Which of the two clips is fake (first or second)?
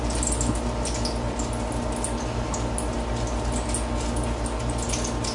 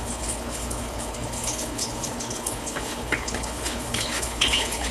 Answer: second